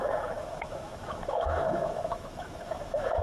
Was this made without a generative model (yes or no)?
no